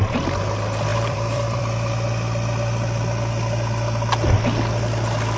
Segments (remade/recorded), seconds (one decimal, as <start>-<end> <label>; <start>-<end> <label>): 0.0-0.9 recorded; 0.9-1.6 remade; 1.6-5.4 recorded